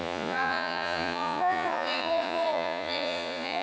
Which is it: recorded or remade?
remade